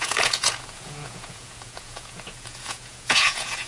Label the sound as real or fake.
fake